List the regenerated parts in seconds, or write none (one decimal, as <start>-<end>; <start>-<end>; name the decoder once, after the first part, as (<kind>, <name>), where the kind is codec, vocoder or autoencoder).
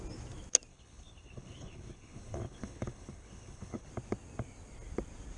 0.7-3.9 (codec, HILCodec)